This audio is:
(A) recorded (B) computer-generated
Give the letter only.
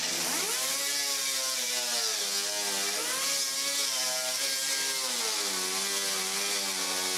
A